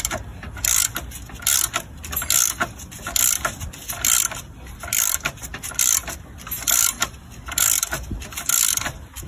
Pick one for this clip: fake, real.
real